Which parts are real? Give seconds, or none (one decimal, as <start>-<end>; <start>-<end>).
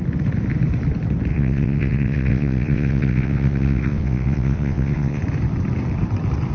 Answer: 0.0-1.3; 5.2-6.5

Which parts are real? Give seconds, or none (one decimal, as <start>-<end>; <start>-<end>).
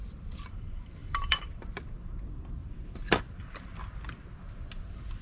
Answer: 0.0-1.0; 2.2-2.6; 3.7-5.2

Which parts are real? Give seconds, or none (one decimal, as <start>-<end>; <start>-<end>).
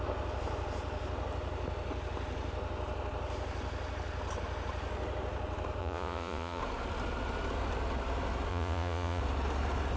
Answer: 0.0-5.8; 6.6-8.5; 9.2-10.0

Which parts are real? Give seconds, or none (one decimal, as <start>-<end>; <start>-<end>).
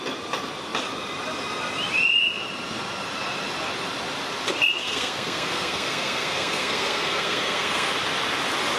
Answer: 0.0-4.8; 7.9-8.8